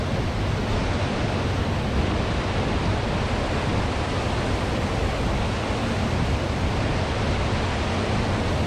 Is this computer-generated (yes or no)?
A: no